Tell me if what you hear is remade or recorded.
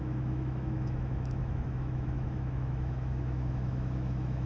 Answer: remade